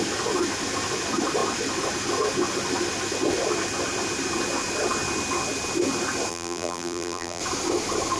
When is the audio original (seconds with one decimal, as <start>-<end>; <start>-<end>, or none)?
0.0-6.3; 7.4-8.2